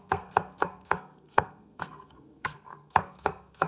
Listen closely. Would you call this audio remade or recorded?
remade